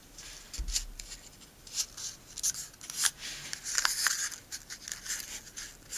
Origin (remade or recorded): recorded